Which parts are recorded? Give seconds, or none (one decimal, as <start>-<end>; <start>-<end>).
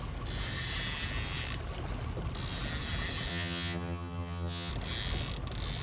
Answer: 0.0-3.3; 4.7-5.8